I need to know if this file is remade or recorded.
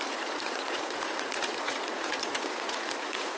remade